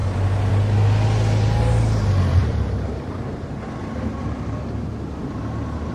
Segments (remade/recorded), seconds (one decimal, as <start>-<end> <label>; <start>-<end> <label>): 0.0-0.5 remade; 0.5-2.4 recorded; 2.4-5.4 remade; 5.4-5.9 recorded